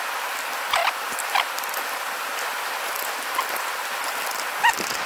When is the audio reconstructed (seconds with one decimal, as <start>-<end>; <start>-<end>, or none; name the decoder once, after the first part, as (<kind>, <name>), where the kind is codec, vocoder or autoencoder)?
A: none